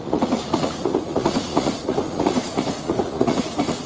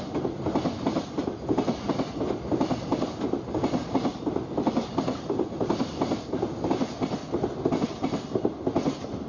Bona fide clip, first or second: second